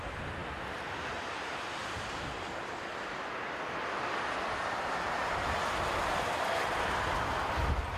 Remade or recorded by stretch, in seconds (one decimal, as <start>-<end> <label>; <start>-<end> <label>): 0.0-8.0 recorded